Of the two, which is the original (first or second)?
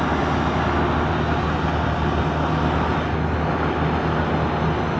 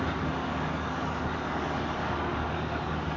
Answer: first